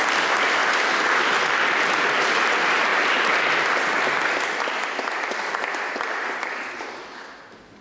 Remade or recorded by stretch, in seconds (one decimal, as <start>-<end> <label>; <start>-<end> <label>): 0.0-7.8 recorded

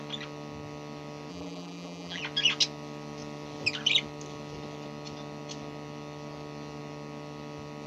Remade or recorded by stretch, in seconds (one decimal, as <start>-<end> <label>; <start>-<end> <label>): 0.0-1.3 recorded; 1.3-2.2 remade; 2.2-7.9 recorded